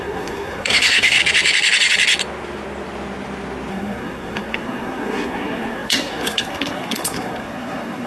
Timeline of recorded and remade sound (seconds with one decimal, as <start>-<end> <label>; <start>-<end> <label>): 0.0-1.2 remade; 1.2-3.7 recorded; 3.7-8.1 remade